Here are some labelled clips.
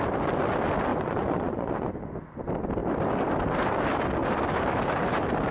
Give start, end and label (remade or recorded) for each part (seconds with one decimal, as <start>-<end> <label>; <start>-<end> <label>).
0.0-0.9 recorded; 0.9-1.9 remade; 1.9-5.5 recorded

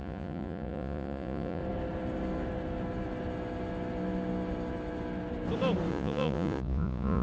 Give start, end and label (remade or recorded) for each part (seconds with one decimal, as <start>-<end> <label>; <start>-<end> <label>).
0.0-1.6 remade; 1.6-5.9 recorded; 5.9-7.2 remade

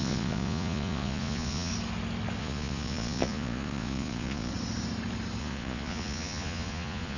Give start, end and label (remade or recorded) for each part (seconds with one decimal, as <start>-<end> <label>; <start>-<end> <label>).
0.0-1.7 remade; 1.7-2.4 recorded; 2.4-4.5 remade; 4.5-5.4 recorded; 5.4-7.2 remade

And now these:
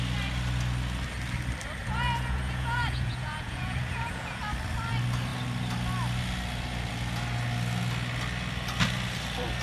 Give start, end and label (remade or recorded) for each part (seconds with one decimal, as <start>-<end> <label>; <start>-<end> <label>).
0.0-1.8 recorded; 1.8-4.4 remade; 4.4-9.6 recorded

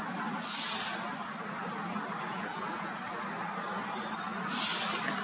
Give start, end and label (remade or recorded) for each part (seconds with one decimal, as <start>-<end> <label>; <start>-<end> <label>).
0.0-2.3 recorded; 2.3-3.0 remade; 3.0-5.2 recorded